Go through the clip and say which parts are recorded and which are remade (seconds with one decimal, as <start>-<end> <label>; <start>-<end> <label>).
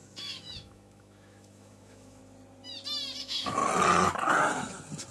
0.0-2.2 remade; 2.2-3.2 recorded; 3.2-3.6 remade; 3.6-5.1 recorded